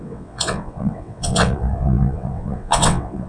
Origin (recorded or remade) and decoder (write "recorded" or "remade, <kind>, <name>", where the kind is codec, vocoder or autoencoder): remade, vocoder, WaveNeXt